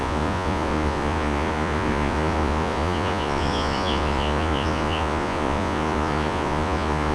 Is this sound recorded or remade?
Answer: remade